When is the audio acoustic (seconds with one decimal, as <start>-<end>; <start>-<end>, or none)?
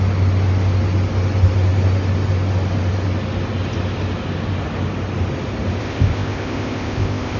0.0-5.8